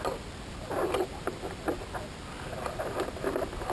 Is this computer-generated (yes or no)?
no